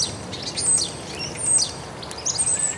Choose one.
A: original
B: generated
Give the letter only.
A